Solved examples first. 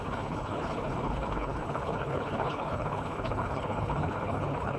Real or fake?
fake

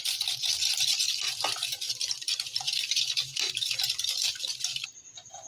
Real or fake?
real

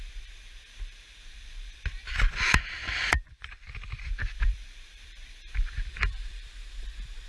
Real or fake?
fake